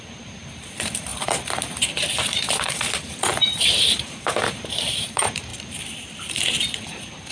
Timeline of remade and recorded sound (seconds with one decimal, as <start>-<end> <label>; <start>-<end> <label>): 0.0-7.3 remade